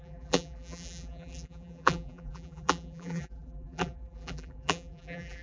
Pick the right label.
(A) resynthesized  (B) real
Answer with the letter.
A